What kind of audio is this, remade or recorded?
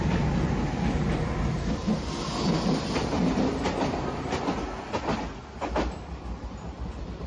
recorded